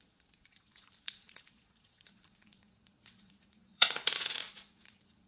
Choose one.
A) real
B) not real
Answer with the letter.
B